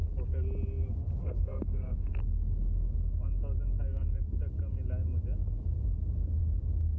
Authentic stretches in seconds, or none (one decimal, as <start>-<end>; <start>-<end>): 0.0-1.2; 2.1-7.0